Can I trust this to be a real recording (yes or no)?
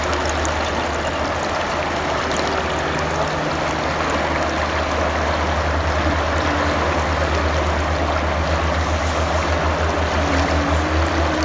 yes